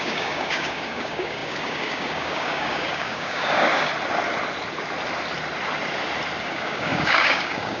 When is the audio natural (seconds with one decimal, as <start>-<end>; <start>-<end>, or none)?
3.9-6.4